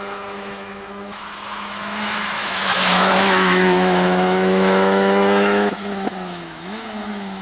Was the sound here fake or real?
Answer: fake